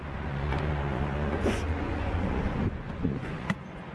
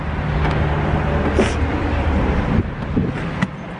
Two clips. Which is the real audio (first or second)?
second